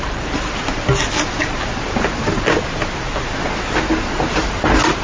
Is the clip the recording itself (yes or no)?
yes